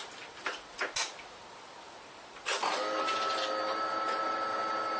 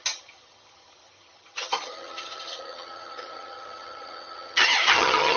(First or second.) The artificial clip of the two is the second